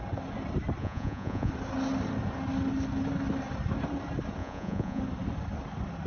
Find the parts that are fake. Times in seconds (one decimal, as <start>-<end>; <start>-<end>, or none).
0.8-1.5; 4.4-5.0